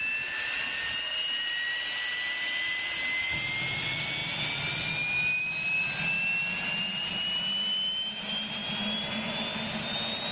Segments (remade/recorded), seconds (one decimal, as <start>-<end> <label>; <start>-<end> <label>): 0.0-10.3 recorded